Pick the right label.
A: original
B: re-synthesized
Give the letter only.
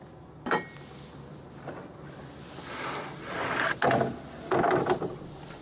A